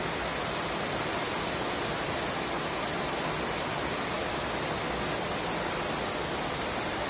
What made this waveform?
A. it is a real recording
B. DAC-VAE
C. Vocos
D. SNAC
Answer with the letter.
A